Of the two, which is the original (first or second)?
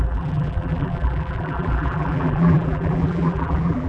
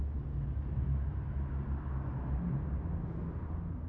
second